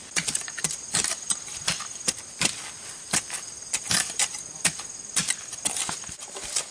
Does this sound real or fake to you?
real